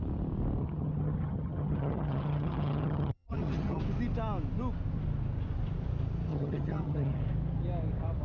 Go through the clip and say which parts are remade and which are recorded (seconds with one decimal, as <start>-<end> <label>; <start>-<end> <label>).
0.0-0.6 recorded; 0.6-3.8 remade; 3.8-6.3 recorded; 6.3-7.2 remade; 7.2-8.2 recorded